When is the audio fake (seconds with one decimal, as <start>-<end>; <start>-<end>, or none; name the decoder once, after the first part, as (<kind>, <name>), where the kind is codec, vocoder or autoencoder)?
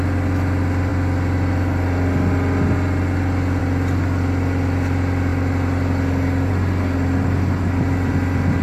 none